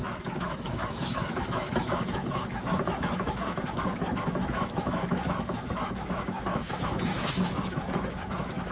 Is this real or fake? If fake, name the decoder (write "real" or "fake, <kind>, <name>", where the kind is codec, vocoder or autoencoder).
fake, autoencoder, DAC-VAE